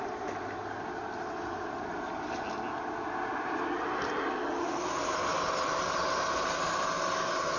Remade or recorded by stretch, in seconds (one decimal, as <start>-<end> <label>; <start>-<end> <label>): 0.0-7.6 recorded